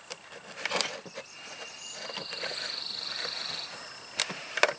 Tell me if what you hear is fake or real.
real